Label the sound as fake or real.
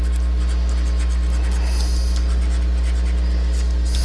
real